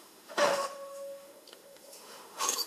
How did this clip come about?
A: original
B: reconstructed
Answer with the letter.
B